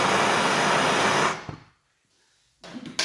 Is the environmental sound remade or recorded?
recorded